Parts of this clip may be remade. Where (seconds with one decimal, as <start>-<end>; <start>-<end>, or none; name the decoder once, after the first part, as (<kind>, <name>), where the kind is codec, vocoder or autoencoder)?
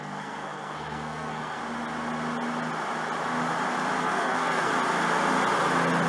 0.0-1.6 (codec, SNAC); 4.0-4.7